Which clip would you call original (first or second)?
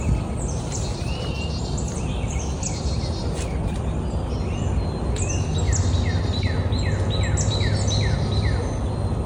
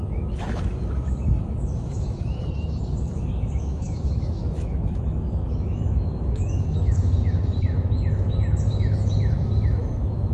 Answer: first